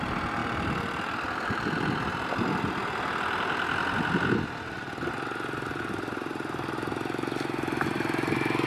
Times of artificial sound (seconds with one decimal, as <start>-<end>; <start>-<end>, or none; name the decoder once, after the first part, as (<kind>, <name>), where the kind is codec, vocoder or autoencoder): none